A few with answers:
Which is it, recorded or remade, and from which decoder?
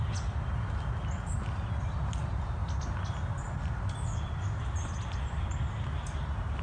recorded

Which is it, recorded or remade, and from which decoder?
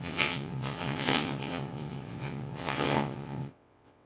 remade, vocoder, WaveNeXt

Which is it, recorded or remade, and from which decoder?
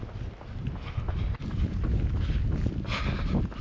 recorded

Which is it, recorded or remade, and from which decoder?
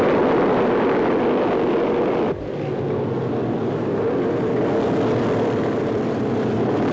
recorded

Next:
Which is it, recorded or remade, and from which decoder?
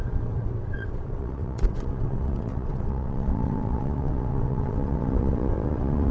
remade, vocoder, WaveNeXt